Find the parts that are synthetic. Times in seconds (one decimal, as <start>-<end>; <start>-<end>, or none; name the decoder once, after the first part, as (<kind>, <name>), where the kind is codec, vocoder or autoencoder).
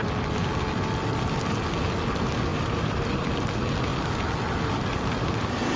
2.5-3.3 (vocoder, BigVGAN v2)